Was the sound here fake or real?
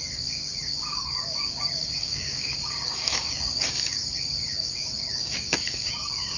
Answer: fake